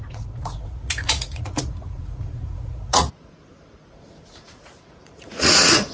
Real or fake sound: fake